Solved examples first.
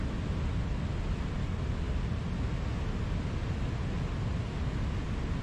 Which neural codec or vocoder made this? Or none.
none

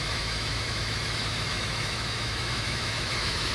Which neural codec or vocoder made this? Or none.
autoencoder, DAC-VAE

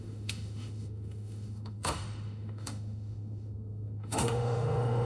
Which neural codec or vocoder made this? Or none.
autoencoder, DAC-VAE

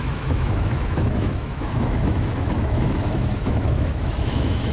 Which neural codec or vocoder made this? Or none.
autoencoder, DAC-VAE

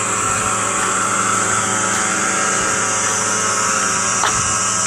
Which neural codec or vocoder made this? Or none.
none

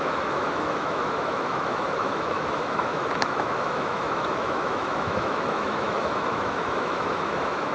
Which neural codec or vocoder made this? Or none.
autoencoder, DAC-VAE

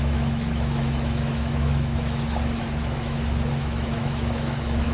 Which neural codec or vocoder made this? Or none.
autoencoder, DAC-VAE